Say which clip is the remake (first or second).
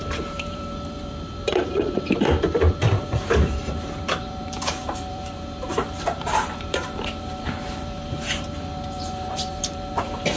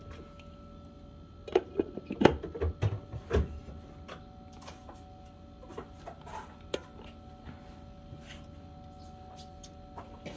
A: first